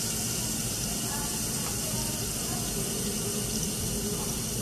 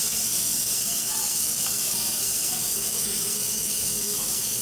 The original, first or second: first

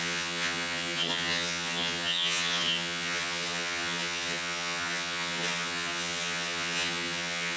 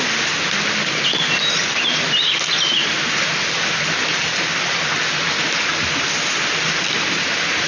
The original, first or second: second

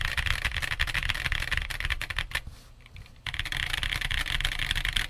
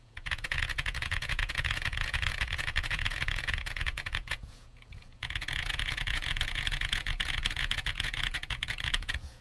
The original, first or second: first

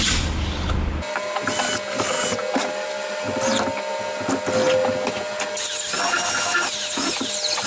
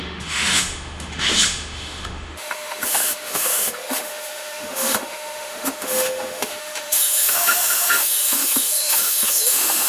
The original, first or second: first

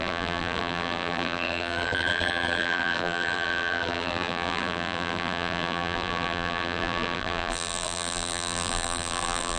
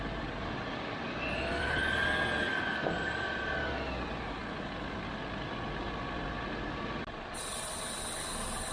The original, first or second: second